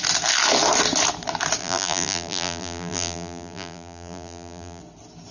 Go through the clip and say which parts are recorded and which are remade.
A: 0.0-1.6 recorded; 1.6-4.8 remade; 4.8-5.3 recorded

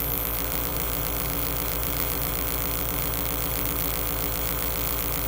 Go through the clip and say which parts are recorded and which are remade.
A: 0.0-5.3 remade

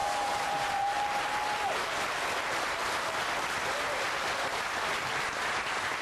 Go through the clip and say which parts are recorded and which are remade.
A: 0.0-1.2 remade; 1.2-6.0 recorded

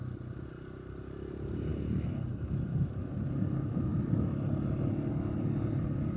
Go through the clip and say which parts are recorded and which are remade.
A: 0.0-6.2 recorded

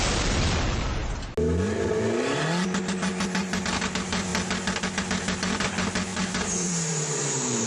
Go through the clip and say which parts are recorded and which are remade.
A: 0.0-6.1 recorded; 6.1-7.7 remade